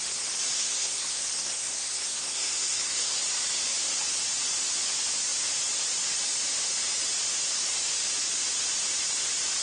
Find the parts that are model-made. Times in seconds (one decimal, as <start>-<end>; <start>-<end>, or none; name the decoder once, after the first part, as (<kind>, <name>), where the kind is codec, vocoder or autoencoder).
0.6-3.2 (codec, SNAC)